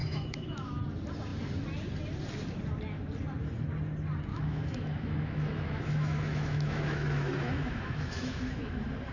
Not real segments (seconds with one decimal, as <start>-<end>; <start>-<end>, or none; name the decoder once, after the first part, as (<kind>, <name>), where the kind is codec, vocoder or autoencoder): 0.0-0.8 (autoencoder, DAC-VAE); 4.3-8.7